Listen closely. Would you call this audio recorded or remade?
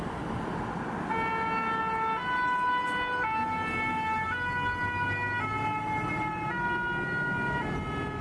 recorded